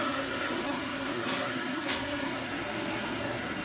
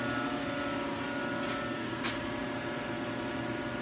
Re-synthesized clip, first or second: first